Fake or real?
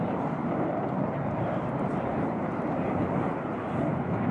fake